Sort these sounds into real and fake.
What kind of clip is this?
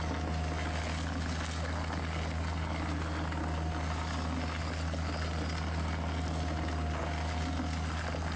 real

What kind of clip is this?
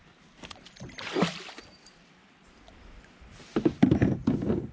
real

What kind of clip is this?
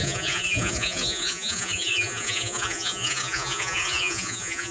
fake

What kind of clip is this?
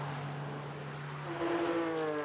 real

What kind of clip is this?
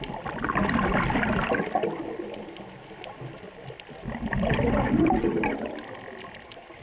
real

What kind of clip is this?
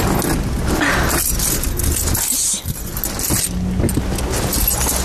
real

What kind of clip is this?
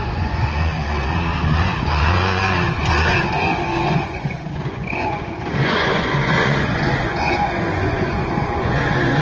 fake